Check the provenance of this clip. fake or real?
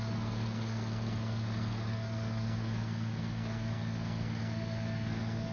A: fake